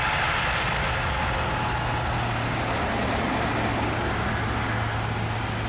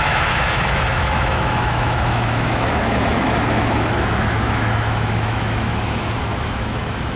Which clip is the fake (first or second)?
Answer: second